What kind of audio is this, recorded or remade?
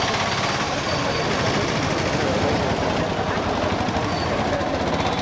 recorded